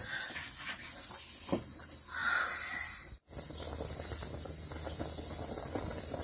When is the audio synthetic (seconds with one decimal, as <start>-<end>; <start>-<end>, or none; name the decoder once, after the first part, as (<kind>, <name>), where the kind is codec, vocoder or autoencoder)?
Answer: none